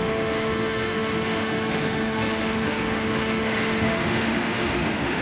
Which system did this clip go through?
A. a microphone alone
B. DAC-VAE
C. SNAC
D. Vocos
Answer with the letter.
B